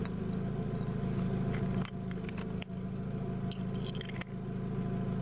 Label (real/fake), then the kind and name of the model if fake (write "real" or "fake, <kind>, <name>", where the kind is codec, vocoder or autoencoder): real